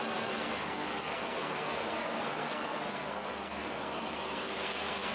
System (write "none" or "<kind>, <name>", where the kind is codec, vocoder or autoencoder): codec, SNAC